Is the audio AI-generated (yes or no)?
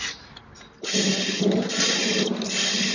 no